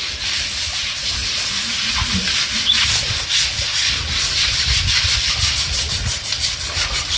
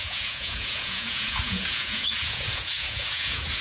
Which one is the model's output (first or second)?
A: second